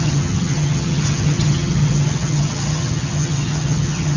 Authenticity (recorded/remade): remade